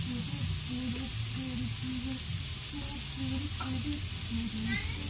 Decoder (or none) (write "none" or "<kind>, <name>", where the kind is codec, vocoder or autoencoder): none